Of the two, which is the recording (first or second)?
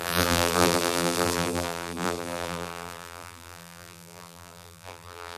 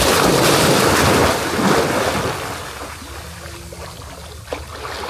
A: second